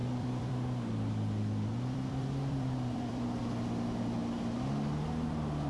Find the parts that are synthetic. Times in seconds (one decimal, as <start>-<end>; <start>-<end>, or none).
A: 0.0-3.4